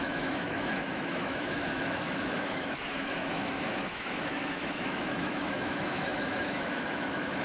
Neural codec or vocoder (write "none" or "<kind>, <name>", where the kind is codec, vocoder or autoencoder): autoencoder, DAC-VAE